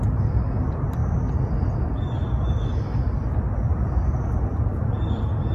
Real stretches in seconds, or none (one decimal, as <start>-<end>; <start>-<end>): 0.0-5.5